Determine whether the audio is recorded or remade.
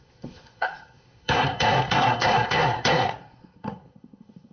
remade